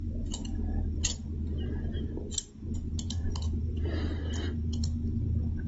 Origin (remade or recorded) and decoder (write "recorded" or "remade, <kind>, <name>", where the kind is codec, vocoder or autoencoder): recorded